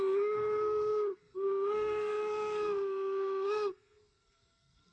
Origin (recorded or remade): remade